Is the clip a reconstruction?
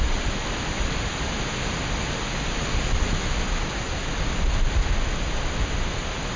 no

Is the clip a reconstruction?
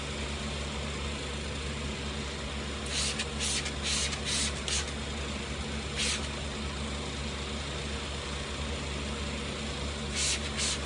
no